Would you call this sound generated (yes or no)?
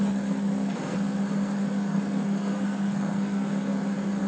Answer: yes